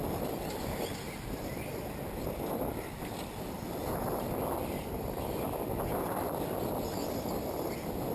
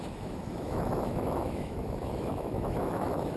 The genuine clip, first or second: first